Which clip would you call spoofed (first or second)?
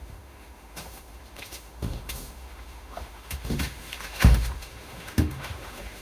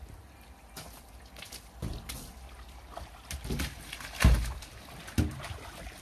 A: first